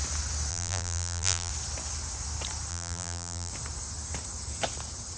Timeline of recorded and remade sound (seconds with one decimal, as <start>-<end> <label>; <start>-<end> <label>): 0.0-0.5 recorded; 0.5-1.5 remade; 1.5-2.7 recorded; 2.7-3.5 remade; 3.5-5.2 recorded